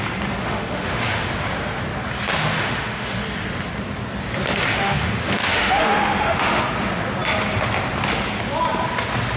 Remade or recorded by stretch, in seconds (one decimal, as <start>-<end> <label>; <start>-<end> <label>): 0.0-0.4 recorded; 0.4-1.3 remade; 1.3-2.5 recorded; 2.5-3.2 remade; 3.2-4.7 recorded; 4.7-6.6 remade; 6.6-9.4 recorded